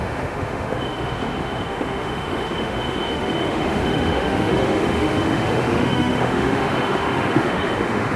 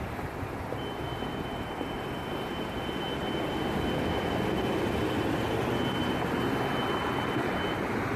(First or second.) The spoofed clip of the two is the first